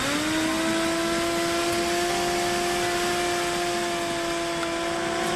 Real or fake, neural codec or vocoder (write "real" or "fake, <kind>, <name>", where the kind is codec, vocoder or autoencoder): real